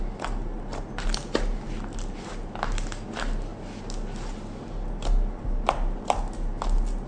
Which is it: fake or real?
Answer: real